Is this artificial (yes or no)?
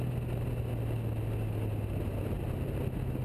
no